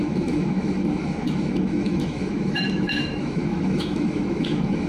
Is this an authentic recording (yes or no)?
no